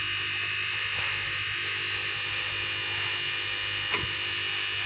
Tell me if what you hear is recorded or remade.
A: recorded